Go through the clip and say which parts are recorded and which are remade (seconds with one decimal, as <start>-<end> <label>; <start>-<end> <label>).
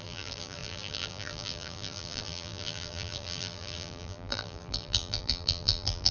0.0-6.1 remade